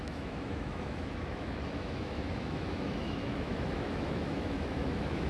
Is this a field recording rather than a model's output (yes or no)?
no